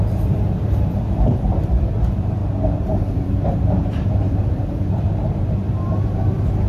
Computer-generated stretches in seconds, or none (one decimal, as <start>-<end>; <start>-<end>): 0.0-2.4; 3.1-6.7